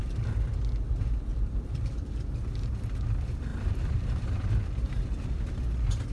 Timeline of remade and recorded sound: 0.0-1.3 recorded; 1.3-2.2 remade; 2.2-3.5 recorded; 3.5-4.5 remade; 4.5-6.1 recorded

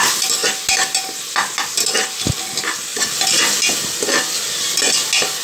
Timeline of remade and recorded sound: 0.0-5.4 recorded

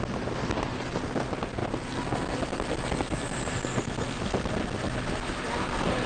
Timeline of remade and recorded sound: 0.0-1.6 recorded; 1.6-5.3 remade; 5.3-6.1 recorded

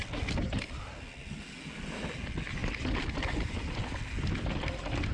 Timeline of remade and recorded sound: 0.0-5.1 recorded

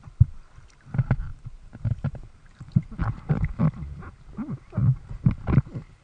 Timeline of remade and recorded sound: 0.0-1.3 recorded; 1.3-3.6 remade; 3.6-4.8 recorded; 4.8-5.6 remade; 5.6-6.0 recorded